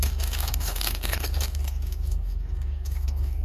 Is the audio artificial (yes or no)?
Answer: yes